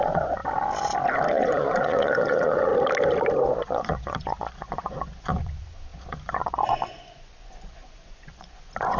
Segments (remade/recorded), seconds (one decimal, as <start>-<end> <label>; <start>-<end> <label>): 0.0-0.4 remade; 0.4-1.3 recorded; 1.3-2.7 remade; 2.7-3.6 recorded; 3.6-9.0 remade